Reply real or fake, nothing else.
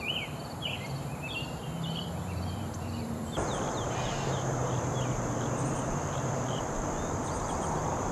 fake